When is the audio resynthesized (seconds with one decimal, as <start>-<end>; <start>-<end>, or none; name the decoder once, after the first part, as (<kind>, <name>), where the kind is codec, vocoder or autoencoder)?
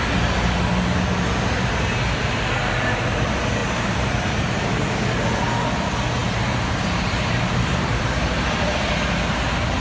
3.6-4.9 (vocoder, BigVGAN v2); 6.2-8.9